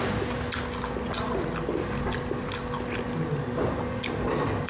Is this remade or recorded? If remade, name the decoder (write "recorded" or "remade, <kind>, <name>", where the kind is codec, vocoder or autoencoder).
recorded